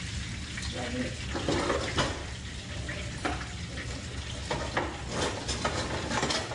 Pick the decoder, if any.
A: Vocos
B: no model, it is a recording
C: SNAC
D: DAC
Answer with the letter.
B